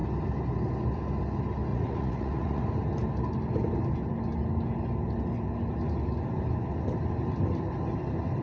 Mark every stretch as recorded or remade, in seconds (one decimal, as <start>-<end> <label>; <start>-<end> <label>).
0.0-1.7 recorded; 1.7-2.6 remade; 2.6-8.4 recorded